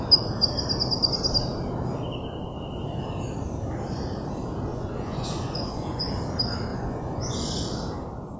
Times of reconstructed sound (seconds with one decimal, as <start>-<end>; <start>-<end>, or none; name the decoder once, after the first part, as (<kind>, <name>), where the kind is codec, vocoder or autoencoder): 4.7-6.1 (vocoder, Vocos); 6.7-7.6